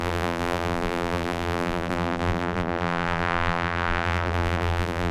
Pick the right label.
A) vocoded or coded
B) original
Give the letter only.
A